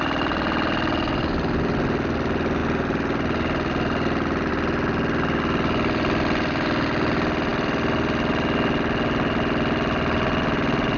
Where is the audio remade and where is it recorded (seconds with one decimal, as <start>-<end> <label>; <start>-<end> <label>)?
0.0-11.0 recorded